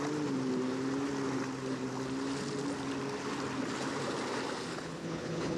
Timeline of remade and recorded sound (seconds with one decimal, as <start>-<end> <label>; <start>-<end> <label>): 0.0-4.7 recorded; 4.7-5.6 remade